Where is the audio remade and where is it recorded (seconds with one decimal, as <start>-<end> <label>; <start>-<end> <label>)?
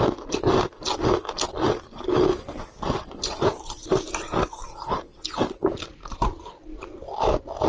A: 0.0-2.3 recorded; 2.3-6.4 remade; 6.4-7.7 recorded